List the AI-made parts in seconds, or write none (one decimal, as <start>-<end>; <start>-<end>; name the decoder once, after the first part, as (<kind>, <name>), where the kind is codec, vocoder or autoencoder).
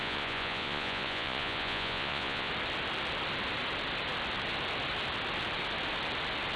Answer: 0.0-2.5 (vocoder, Vocos)